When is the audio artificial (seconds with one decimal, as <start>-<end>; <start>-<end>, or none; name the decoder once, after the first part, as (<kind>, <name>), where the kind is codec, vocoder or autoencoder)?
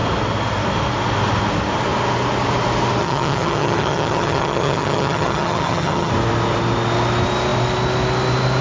3.0-6.1 (vocoder, HiFi-GAN)